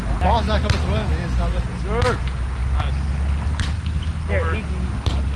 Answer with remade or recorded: recorded